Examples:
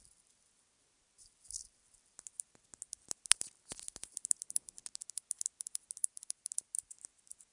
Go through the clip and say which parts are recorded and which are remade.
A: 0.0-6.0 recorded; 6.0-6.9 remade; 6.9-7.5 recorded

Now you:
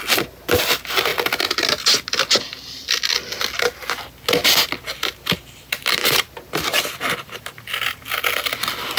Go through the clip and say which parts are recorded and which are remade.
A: 0.0-6.0 recorded; 6.0-7.0 remade; 7.0-9.0 recorded